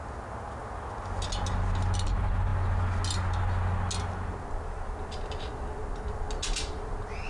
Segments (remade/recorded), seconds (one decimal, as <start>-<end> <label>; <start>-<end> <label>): 0.0-7.3 recorded